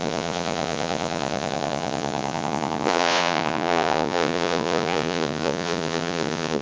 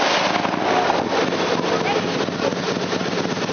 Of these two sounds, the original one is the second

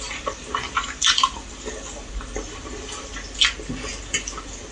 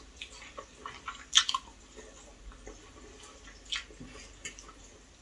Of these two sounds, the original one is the second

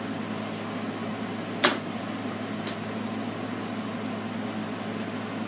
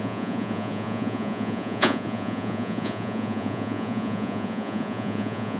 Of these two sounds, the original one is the first